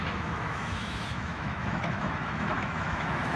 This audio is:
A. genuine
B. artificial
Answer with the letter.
B